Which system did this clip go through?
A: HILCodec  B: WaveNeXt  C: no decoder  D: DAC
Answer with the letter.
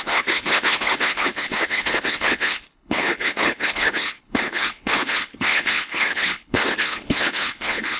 A